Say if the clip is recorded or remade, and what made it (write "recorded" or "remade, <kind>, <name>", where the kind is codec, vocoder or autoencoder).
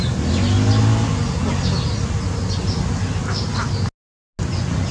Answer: recorded